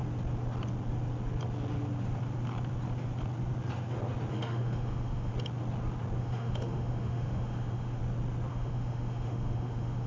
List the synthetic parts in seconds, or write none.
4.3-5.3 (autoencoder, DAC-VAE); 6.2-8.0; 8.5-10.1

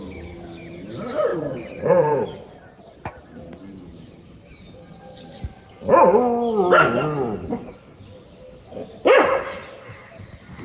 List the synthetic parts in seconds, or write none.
1.3-4.1 (vocoder, BigVGAN v2)

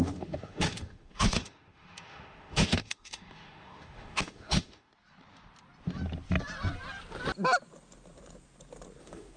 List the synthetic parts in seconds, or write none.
0.0-4.9 (autoencoder, DAC-VAE); 9.0-9.4

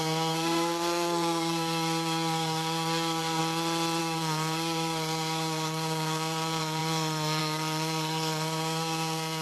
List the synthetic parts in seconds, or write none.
0.0-3.4 (codec, SNAC); 4.0-9.4

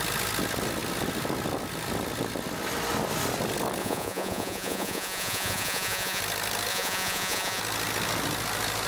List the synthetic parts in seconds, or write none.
3.8-6.2 (vocoder, Vocos); 6.7-7.6

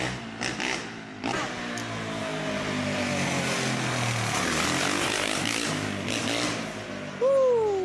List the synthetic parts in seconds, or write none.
none